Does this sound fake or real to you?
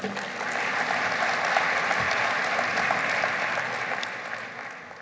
real